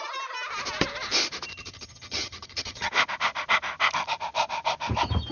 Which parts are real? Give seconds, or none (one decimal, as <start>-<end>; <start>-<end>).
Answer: 0.0-1.5; 2.9-5.3